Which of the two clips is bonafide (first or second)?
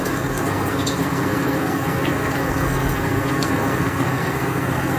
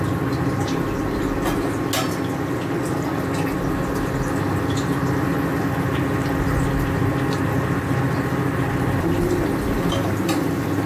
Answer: second